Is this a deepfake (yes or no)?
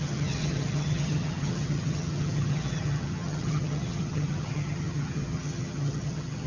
yes